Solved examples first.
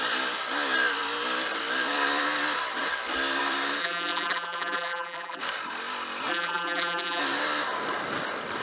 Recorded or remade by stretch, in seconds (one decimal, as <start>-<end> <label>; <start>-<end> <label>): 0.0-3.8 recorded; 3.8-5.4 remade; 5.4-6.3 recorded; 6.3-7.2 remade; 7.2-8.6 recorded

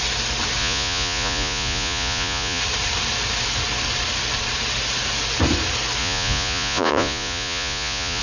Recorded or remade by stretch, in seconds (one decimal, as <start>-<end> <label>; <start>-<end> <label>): 0.0-0.6 recorded; 0.6-2.6 remade; 2.6-6.0 recorded; 6.0-8.2 remade

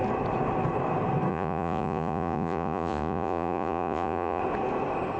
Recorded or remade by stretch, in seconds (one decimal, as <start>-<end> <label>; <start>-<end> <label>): 0.0-1.3 recorded; 1.3-4.4 remade; 4.4-5.2 recorded

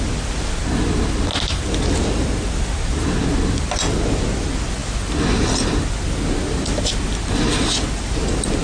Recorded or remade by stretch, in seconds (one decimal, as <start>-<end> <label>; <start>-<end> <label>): 0.0-8.6 recorded